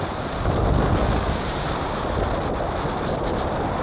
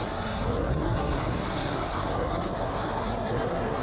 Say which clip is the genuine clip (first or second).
first